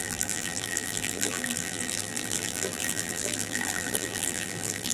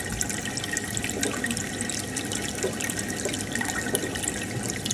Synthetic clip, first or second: first